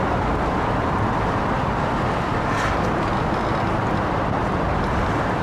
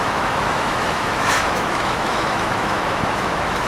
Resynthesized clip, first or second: second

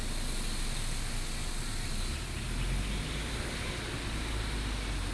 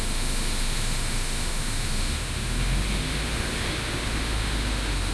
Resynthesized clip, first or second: second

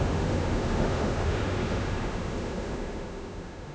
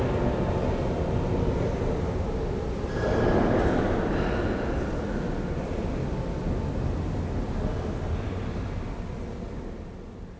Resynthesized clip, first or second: first